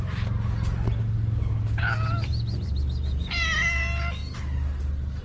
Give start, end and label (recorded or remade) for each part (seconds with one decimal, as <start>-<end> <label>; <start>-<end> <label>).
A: 0.0-5.2 recorded